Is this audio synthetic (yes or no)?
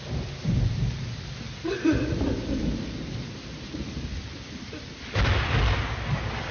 no